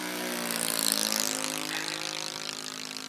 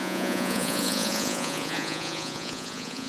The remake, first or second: second